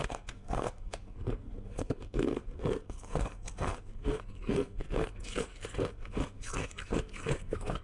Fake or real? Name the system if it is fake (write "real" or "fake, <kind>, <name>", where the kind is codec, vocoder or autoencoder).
fake, codec, SNAC